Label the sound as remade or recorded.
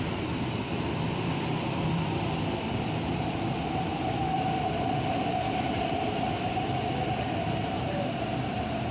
remade